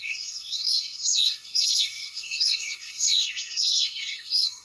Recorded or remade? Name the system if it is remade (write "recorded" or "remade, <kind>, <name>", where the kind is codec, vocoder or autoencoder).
remade, codec, SNAC